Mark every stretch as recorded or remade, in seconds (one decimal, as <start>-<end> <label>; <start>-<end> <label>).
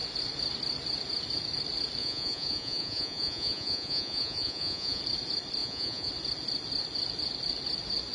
0.0-2.0 recorded; 2.0-5.0 remade; 5.0-5.6 recorded; 5.6-6.1 remade; 6.1-8.1 recorded